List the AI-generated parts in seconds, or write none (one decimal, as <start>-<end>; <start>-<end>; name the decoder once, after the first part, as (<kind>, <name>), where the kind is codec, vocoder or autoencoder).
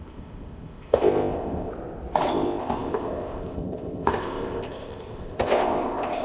0.0-1.7 (codec, ZipCodec); 2.3-6.2